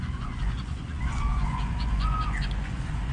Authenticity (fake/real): fake